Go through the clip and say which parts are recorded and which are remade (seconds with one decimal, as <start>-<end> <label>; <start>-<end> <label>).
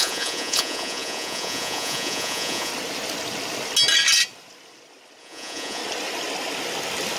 0.0-2.7 remade; 2.7-5.2 recorded; 5.2-5.8 remade; 5.8-7.2 recorded